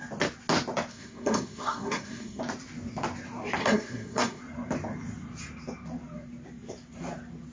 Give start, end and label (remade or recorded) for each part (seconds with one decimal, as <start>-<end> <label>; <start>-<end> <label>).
0.0-0.9 recorded; 0.9-2.4 remade; 2.4-3.6 recorded; 3.6-4.4 remade; 4.4-7.5 recorded